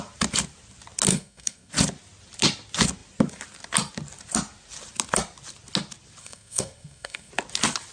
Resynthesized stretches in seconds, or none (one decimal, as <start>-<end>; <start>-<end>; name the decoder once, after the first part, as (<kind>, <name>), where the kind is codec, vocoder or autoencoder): 1.1-1.7 (codec, SNAC); 6.2-7.3